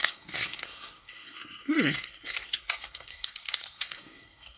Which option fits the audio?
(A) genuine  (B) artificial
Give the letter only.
B